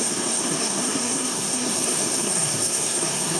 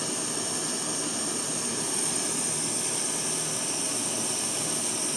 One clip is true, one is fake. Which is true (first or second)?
second